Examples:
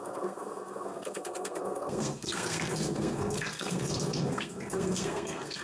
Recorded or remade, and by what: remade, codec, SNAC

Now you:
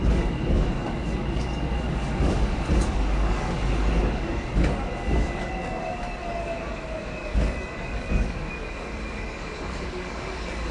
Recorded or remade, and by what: remade, codec, DAC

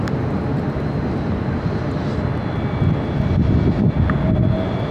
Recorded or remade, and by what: recorded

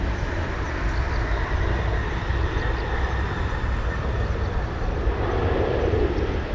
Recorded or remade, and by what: remade, vocoder, BigVGAN v2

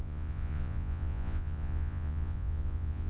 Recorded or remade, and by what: remade, vocoder, Vocos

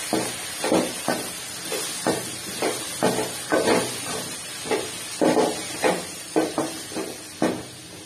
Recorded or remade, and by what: recorded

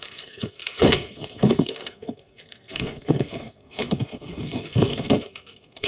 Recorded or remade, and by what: remade, codec, SNAC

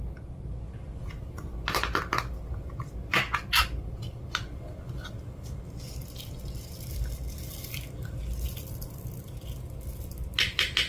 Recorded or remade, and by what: recorded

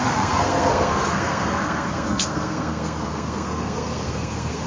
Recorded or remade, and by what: remade, codec, SNAC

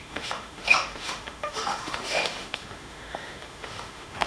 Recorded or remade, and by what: remade, autoencoder, DAC-VAE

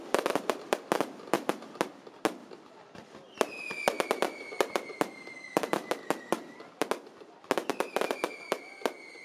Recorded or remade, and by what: recorded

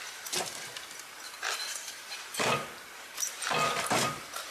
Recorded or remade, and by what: recorded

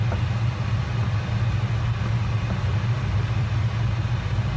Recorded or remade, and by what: recorded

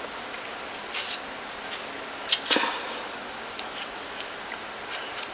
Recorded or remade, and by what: recorded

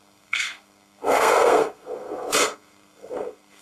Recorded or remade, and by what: remade, codec, SNAC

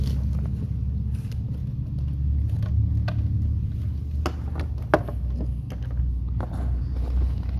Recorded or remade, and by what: recorded